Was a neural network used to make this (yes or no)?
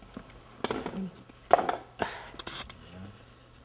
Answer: no